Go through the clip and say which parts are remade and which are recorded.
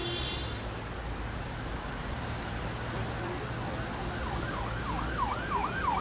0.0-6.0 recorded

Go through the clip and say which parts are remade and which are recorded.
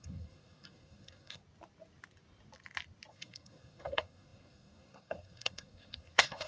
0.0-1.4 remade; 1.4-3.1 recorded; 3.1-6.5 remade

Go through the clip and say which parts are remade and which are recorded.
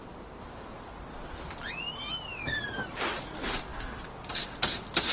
0.0-5.1 recorded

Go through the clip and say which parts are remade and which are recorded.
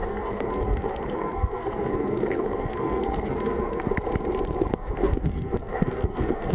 0.0-3.9 remade; 3.9-4.7 recorded; 4.7-6.5 remade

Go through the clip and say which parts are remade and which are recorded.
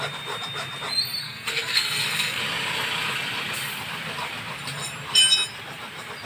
0.0-1.2 recorded; 1.2-2.4 remade; 2.4-6.3 recorded